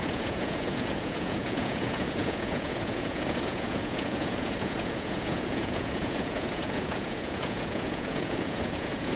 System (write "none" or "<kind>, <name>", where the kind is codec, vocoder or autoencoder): vocoder, Vocos